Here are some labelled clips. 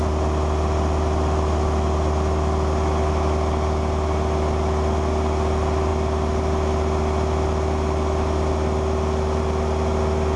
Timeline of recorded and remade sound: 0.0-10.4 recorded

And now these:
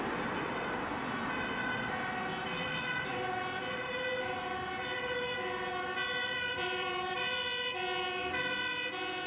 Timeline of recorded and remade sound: 0.0-2.4 recorded; 2.4-3.2 remade; 3.2-6.2 recorded; 6.2-7.2 remade; 7.2-8.2 recorded; 8.2-8.7 remade; 8.7-9.3 recorded

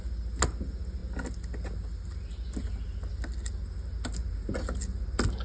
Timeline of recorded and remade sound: 0.0-5.4 recorded